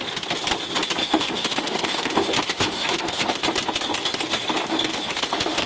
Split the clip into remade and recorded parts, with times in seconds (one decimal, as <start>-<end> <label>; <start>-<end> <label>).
0.0-1.0 recorded; 1.0-3.4 remade; 3.4-4.7 recorded; 4.7-5.7 remade